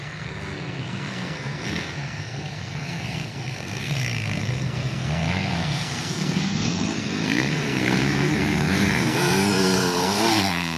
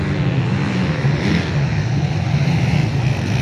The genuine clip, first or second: second